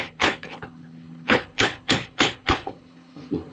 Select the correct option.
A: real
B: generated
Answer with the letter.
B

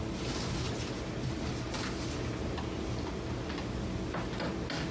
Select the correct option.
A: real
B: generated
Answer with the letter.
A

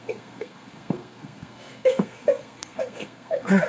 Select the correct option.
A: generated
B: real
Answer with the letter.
A